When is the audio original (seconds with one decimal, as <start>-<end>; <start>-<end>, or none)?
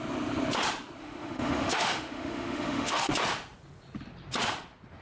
0.0-1.0; 3.1-5.0